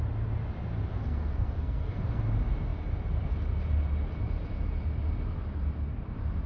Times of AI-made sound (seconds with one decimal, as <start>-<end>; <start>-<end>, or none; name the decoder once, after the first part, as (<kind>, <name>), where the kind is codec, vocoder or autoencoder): 1.0-2.2 (codec, SNAC)

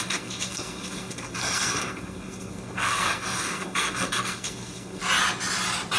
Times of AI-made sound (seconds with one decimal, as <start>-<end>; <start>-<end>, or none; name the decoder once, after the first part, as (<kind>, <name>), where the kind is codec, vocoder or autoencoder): 0.0-5.0 (codec, SNAC)

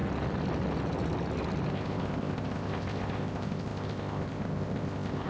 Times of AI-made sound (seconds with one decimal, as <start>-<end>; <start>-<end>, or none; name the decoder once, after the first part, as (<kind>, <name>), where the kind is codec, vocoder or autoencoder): 1.7-5.3 (codec, ZipCodec)